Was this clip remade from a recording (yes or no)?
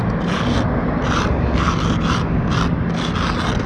no